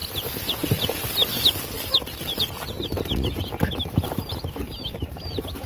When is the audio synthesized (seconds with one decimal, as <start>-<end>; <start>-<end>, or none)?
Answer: none